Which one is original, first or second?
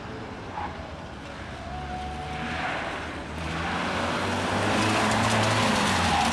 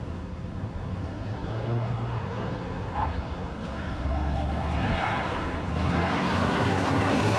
first